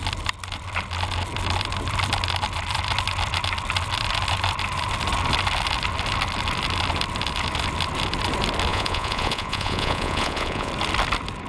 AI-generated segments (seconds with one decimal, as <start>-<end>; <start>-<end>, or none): 8.7-10.7